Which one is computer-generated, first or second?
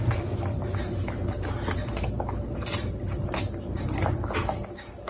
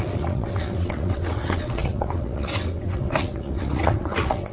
second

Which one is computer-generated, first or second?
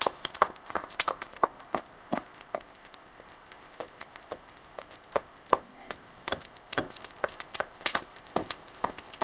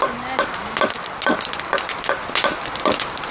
first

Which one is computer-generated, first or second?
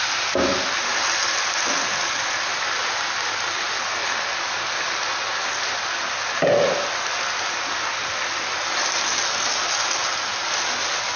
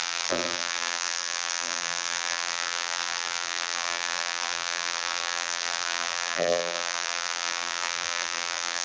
second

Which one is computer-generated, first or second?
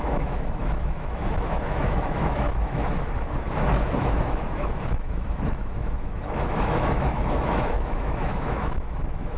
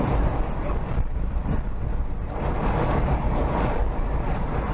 first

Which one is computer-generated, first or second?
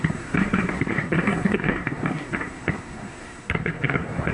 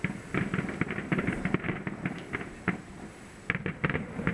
first